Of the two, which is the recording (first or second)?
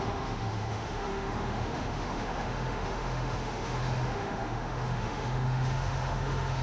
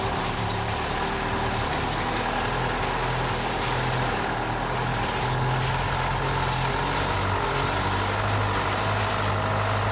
second